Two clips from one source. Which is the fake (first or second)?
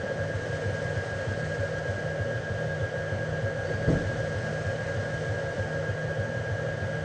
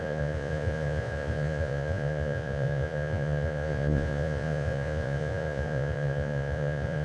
second